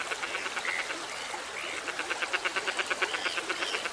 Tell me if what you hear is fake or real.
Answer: real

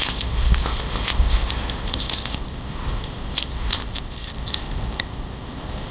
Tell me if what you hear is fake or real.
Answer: fake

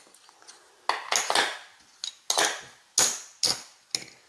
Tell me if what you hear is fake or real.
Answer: real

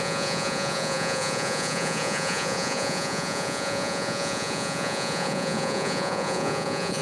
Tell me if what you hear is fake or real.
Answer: fake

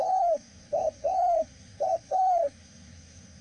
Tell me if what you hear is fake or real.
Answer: fake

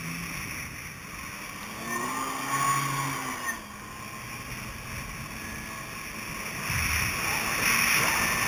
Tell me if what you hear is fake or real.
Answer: real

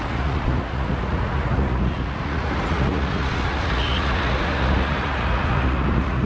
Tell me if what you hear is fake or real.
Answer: fake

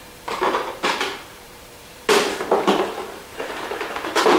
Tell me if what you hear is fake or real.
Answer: fake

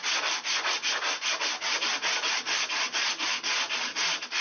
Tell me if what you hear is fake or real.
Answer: real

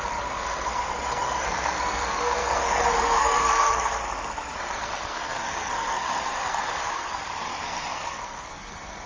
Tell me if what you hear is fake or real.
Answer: fake